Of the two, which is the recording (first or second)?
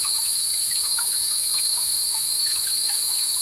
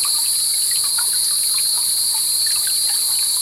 second